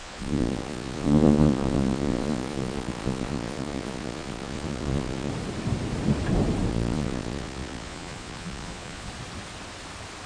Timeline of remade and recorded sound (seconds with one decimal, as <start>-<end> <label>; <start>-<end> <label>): 0.0-5.3 remade; 5.3-6.7 recorded; 6.7-9.1 remade; 9.1-10.3 recorded